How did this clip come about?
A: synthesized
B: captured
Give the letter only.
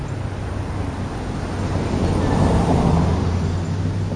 B